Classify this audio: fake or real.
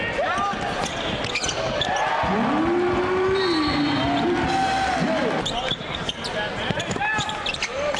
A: real